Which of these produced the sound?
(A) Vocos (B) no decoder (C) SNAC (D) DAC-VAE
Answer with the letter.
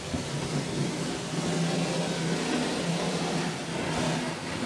B